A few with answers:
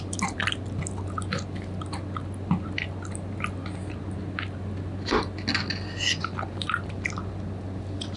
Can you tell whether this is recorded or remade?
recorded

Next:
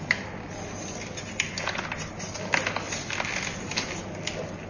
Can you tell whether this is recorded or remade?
recorded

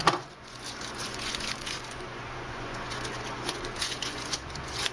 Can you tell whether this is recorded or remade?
remade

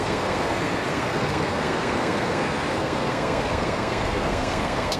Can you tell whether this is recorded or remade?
remade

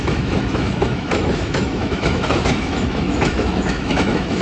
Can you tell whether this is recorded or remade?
remade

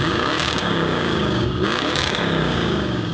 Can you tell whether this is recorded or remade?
remade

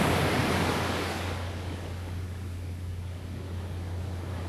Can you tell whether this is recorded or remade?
remade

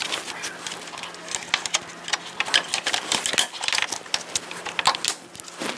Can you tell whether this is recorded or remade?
recorded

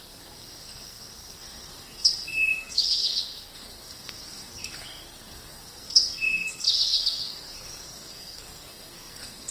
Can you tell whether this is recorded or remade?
remade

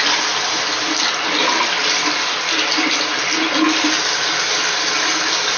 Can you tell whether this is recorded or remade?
recorded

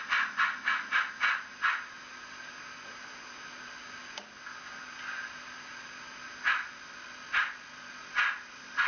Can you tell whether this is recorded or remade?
recorded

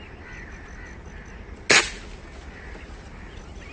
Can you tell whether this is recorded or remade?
recorded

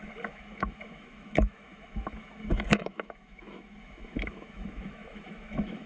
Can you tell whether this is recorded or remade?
remade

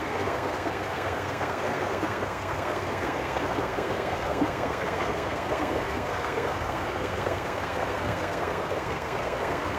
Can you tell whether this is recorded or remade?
remade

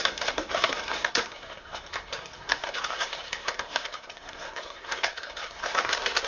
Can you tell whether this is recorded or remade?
remade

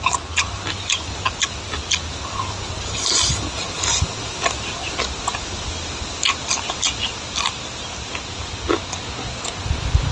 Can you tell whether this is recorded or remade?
recorded